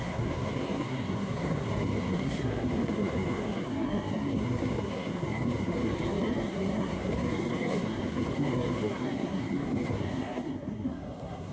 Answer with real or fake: fake